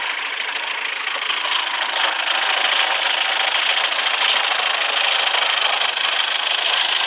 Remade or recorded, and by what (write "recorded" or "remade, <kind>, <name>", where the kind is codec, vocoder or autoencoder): recorded